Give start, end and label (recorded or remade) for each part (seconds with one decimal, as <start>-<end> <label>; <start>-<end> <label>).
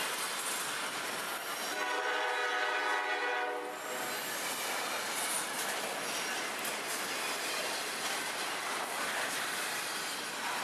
0.0-10.6 recorded